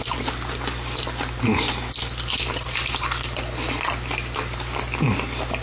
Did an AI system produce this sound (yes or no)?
no